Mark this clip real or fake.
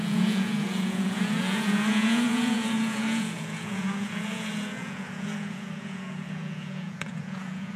fake